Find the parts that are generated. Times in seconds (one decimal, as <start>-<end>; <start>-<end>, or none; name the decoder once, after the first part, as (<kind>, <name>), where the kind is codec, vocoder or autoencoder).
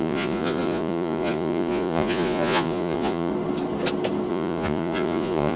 0.0-3.3 (vocoder, Vocos); 4.3-5.6